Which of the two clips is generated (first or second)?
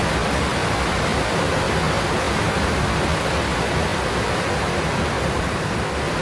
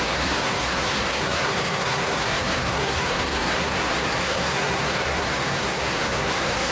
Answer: second